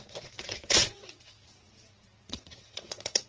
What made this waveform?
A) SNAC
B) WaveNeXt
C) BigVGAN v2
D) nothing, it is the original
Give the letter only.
B